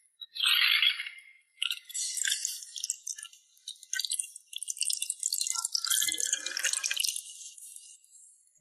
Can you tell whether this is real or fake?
real